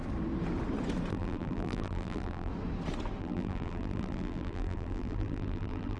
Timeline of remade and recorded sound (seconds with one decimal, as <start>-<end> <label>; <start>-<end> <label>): 0.0-1.1 recorded; 1.1-2.5 remade; 2.5-3.2 recorded; 3.2-6.0 remade